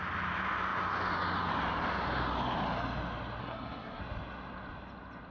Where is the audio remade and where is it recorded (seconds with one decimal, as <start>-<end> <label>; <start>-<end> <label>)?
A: 0.0-3.4 recorded; 3.4-4.0 remade; 4.0-5.3 recorded